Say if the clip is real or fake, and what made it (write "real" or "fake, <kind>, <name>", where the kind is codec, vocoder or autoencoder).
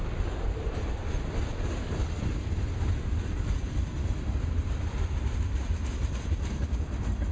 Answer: real